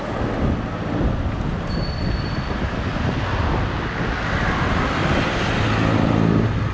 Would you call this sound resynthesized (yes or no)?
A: no